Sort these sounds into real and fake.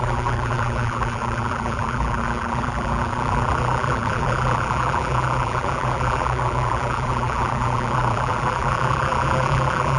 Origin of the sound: fake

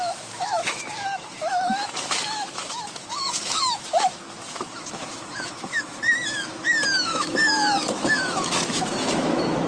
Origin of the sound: fake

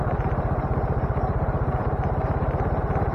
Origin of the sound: fake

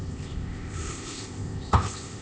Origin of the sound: fake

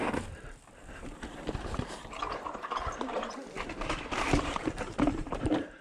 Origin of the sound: fake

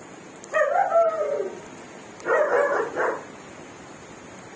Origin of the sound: real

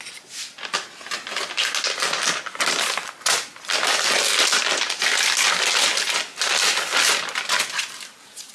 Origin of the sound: real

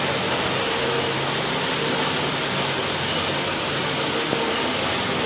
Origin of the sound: real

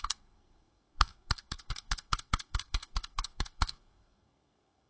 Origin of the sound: fake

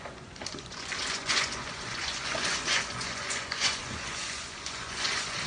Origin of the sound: fake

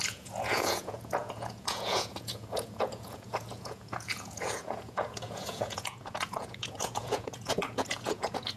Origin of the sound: fake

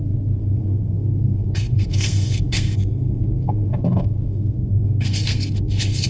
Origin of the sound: fake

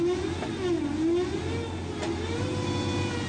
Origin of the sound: real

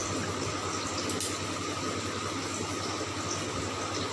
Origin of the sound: real